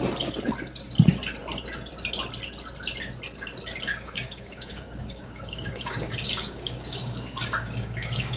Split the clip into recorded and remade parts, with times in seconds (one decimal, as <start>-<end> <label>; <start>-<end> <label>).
0.0-3.9 recorded; 3.9-8.4 remade